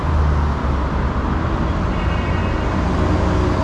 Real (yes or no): yes